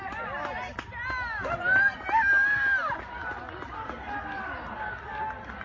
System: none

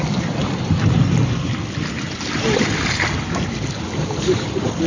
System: none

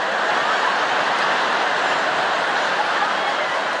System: none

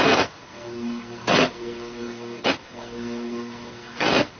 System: codec, SNAC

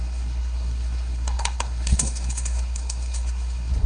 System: codec, SNAC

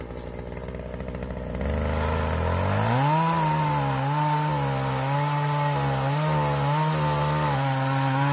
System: none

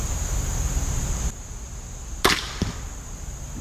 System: none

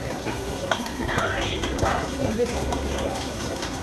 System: codec, SNAC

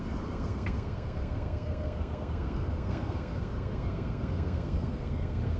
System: codec, SNAC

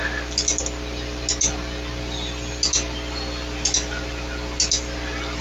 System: none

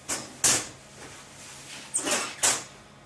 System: none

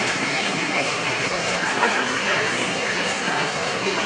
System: codec, SNAC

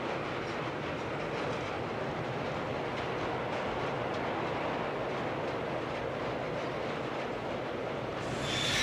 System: none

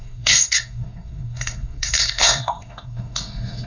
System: codec, SNAC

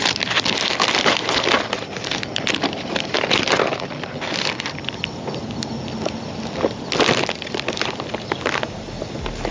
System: none